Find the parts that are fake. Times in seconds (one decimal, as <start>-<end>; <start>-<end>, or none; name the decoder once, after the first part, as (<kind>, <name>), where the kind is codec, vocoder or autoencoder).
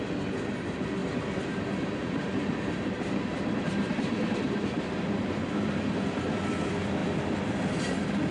1.0-6.0 (vocoder, BigVGAN v2)